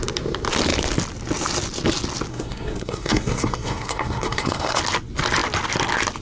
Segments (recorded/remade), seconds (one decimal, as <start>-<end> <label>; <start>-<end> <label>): 0.0-2.3 recorded; 2.3-4.8 remade; 4.8-6.2 recorded